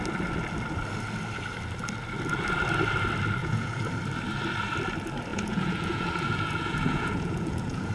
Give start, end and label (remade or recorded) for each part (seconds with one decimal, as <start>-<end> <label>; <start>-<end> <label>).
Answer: 0.0-3.4 recorded; 3.4-3.9 remade; 3.9-5.3 recorded; 5.3-7.9 remade